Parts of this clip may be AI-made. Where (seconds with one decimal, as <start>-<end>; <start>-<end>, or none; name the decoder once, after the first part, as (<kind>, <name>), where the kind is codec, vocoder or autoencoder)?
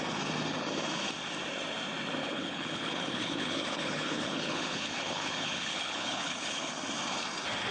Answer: 2.2-6.7 (codec, HILCodec)